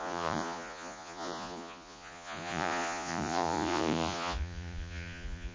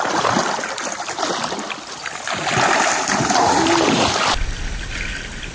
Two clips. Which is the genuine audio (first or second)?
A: second